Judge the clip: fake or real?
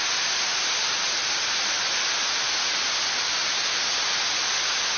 real